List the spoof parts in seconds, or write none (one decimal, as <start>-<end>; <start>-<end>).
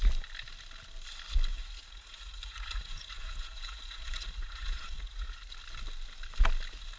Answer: 1.5-5.5